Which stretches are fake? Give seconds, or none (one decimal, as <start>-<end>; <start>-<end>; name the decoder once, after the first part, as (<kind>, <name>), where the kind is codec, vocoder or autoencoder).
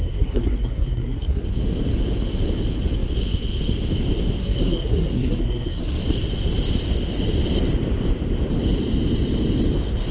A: 0.0-1.4 (codec, SNAC); 4.4-6.0